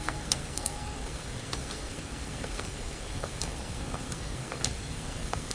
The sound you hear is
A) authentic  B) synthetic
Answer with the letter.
B